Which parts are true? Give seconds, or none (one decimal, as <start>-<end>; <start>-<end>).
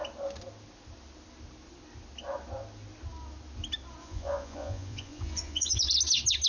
0.0-4.0; 5.9-6.5